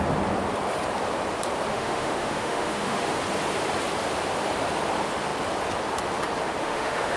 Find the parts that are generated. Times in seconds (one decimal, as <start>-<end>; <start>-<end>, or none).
1.7-3.2; 6.6-7.2